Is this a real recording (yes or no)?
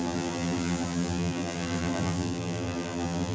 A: no